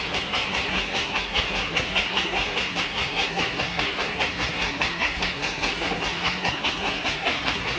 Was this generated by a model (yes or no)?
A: yes